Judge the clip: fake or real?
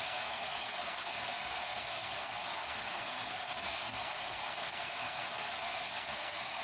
fake